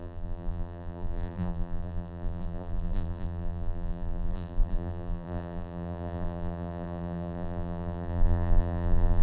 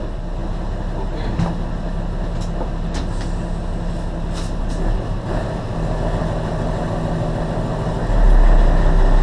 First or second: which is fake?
first